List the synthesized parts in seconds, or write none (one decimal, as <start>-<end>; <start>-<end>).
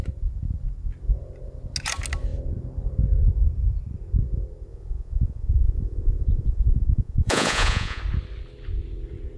4.7-8.0